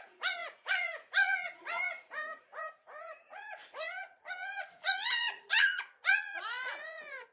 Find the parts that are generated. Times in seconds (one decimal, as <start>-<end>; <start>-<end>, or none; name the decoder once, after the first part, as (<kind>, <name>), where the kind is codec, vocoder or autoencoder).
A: 0.0-7.3 (vocoder, Vocos)